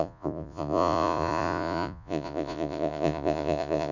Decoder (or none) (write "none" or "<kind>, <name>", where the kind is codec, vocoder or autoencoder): vocoder, Vocos